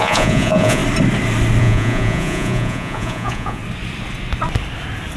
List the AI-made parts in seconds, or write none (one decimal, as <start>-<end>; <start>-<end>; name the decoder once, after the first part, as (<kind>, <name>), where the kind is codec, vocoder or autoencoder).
0.0-0.8 (vocoder, Vocos); 1.6-3.6

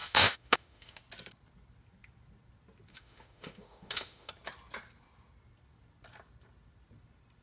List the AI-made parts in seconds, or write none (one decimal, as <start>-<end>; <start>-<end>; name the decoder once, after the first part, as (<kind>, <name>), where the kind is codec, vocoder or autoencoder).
0.0-1.0 (autoencoder, DAC-VAE); 2.9-4.3

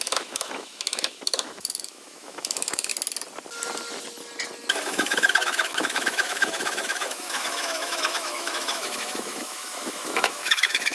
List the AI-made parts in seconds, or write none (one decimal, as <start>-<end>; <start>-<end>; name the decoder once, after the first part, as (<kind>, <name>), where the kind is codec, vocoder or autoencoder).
0.0-2.9 (autoencoder, DAC-VAE); 4.8-10.9

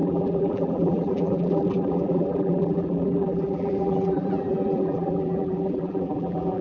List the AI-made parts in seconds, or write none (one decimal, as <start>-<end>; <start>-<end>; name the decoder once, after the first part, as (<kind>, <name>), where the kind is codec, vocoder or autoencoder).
0.0-6.6 (vocoder, BigVGAN v2)

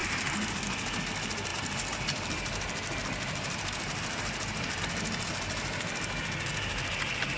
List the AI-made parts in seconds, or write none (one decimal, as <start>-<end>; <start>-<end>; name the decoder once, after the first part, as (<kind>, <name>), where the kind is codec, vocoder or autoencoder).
none